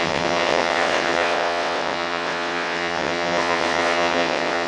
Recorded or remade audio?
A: remade